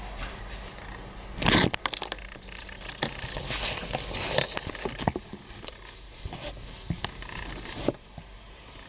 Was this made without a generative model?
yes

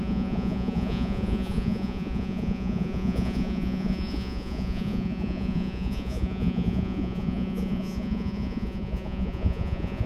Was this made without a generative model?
no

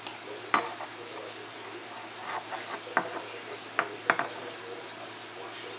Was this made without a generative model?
yes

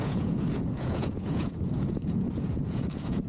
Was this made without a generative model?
no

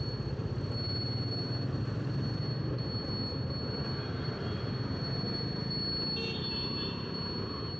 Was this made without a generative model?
yes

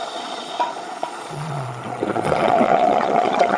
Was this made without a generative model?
no